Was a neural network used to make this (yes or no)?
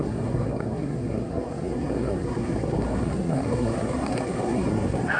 yes